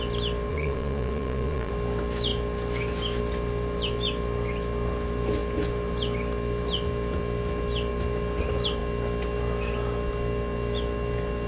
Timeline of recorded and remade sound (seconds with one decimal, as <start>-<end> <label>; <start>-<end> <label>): 0.0-0.5 recorded; 0.5-1.7 remade; 1.7-11.5 recorded